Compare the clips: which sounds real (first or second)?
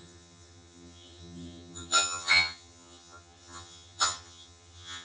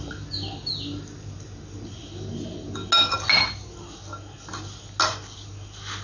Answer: second